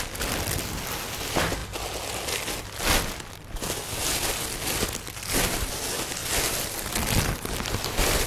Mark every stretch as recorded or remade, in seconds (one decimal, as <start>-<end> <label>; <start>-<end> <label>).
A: 0.0-6.2 recorded; 6.2-7.2 remade; 7.2-8.3 recorded